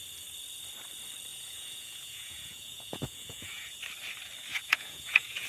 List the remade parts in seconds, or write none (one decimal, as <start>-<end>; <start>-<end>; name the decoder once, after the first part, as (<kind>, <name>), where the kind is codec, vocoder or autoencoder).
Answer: 1.3-3.8 (vocoder, Vocos); 4.5-5.5